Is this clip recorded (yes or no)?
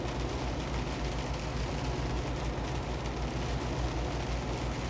yes